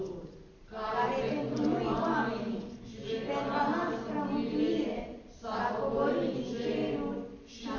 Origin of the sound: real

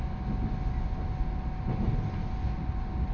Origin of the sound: real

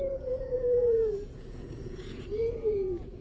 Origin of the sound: fake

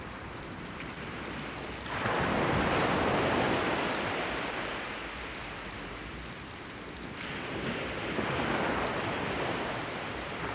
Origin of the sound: real